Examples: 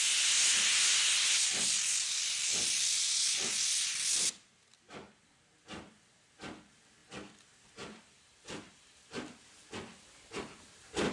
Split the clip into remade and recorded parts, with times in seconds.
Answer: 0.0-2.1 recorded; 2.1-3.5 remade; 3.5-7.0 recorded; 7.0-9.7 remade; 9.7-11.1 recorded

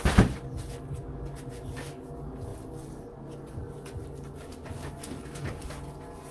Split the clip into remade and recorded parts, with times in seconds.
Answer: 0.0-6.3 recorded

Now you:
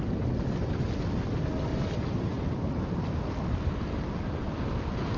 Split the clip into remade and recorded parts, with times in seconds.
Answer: 0.0-1.7 recorded; 1.7-2.5 remade; 2.5-5.2 recorded

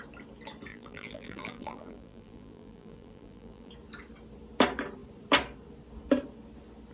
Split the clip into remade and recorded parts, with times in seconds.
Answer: 0.0-0.7 recorded; 0.7-3.7 remade; 3.7-6.9 recorded